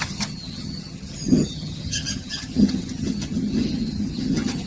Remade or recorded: remade